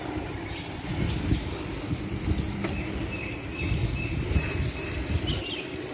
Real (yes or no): yes